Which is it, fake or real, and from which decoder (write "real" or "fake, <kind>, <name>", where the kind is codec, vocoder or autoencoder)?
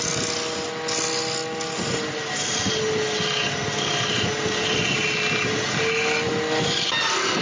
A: real